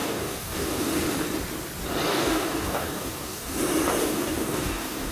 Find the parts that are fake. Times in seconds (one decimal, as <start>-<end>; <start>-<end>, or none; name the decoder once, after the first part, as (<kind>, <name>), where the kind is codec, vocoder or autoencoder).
0.0-0.9 (codec, DAC); 2.1-3.6; 4.0-5.1